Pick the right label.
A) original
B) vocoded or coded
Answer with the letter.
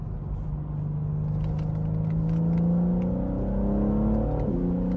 A